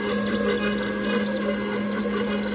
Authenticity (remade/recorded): recorded